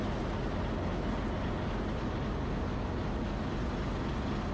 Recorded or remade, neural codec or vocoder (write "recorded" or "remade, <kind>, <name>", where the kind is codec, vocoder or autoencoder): recorded